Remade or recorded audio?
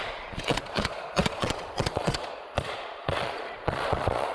remade